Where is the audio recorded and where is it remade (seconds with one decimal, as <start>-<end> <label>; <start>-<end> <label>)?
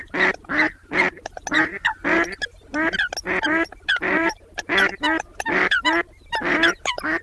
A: 0.0-7.2 recorded